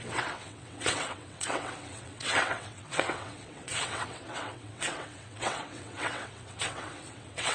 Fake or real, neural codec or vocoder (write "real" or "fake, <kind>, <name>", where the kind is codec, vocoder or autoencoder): fake, vocoder, WaveNeXt